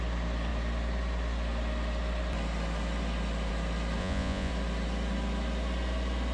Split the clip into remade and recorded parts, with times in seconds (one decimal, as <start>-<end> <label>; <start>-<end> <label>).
0.0-4.0 recorded; 4.0-4.5 remade; 4.5-6.3 recorded